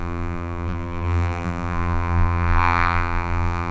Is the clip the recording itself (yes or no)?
no